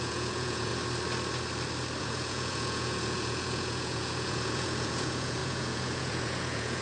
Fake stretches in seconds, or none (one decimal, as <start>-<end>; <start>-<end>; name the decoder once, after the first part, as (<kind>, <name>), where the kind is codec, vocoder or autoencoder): 0.0-0.7 (vocoder, Vocos); 2.0-6.8